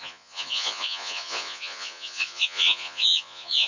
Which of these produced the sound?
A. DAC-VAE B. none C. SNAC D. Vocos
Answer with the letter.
D